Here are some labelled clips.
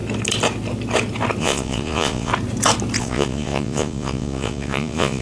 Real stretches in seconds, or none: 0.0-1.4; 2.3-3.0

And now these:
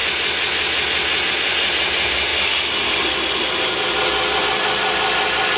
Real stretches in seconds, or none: 0.0-5.6

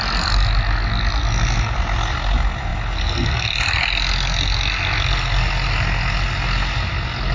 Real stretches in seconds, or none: 0.0-7.3

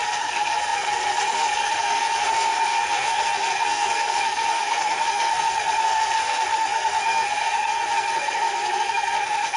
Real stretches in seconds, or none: none

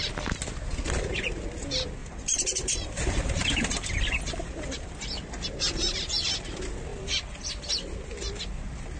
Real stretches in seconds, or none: 0.0-2.0; 4.9-6.9; 7.7-9.0

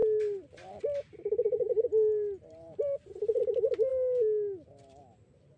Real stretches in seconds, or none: 3.4-5.6